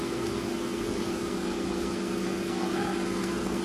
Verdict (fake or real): fake